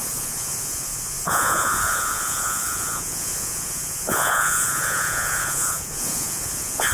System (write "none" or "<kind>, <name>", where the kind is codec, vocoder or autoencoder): vocoder, Vocos